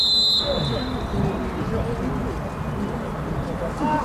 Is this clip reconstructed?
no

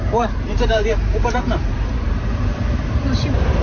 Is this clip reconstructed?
yes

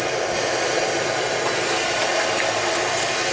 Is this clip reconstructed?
no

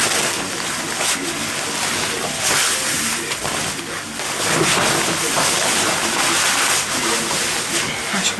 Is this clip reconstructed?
no